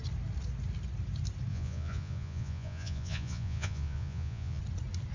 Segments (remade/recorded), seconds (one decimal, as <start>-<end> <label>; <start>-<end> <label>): 0.0-1.5 recorded; 1.5-4.6 remade; 4.6-5.1 recorded